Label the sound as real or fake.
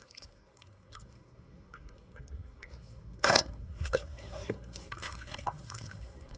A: fake